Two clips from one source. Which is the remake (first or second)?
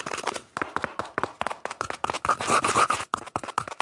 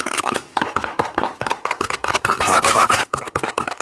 second